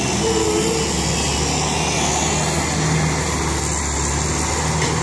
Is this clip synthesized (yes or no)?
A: no